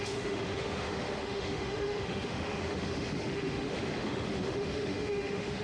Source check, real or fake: fake